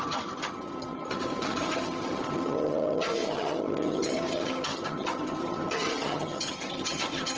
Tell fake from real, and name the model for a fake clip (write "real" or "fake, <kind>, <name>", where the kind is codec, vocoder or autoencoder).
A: fake, vocoder, HiFi-GAN